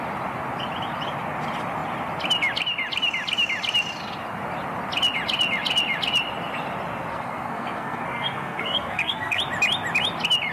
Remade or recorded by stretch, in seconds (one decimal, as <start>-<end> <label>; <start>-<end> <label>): 0.0-7.1 recorded; 7.1-9.4 remade; 9.4-10.5 recorded